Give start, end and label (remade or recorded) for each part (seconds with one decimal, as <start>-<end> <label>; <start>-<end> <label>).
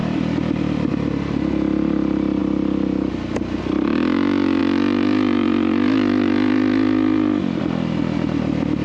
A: 0.0-0.9 remade; 0.9-4.6 recorded; 4.6-7.6 remade; 7.6-8.8 recorded